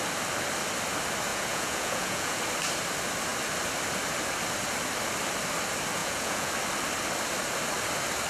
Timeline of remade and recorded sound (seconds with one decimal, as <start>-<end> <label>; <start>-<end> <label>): 0.0-1.3 recorded; 1.3-2.4 remade; 2.4-6.0 recorded; 6.0-6.5 remade; 6.5-8.3 recorded